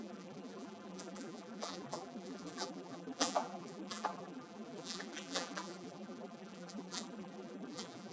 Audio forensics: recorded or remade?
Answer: remade